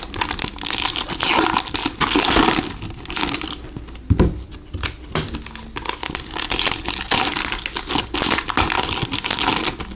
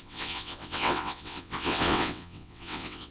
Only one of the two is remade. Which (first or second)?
second